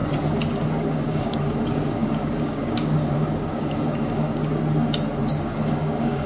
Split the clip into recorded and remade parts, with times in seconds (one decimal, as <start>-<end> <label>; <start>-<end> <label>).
0.0-0.8 recorded; 0.8-4.4 remade; 4.4-5.2 recorded; 5.2-6.3 remade